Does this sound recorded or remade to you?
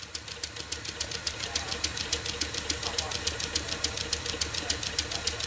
remade